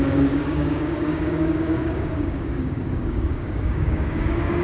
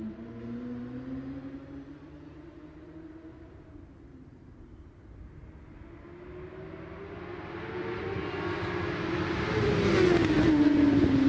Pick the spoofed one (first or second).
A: first